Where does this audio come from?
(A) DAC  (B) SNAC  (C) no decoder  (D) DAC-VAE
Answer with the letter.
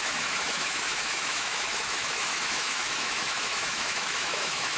D